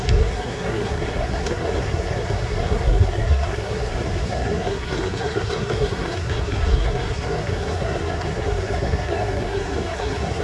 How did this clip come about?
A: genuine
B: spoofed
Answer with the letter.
B